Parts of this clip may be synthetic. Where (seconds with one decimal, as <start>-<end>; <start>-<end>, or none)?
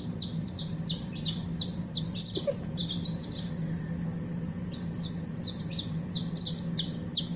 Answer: none